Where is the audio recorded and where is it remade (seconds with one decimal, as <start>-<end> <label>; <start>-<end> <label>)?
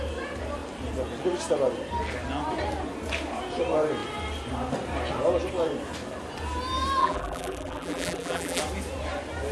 0.0-7.0 recorded; 7.0-8.6 remade; 8.6-9.5 recorded